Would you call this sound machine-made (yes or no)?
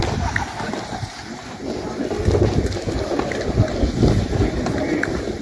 no